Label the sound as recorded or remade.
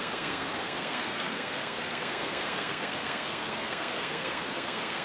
remade